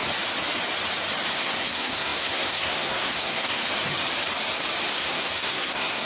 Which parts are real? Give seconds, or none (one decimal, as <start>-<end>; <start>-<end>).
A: 0.0-1.3; 3.6-4.9